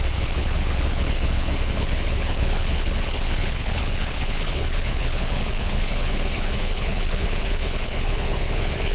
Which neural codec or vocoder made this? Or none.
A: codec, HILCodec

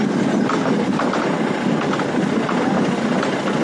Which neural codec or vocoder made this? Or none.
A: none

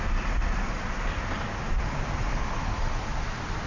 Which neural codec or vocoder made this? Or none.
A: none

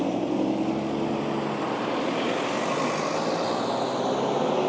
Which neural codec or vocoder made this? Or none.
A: none